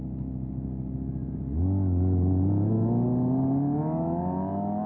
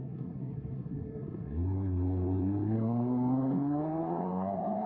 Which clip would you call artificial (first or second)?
second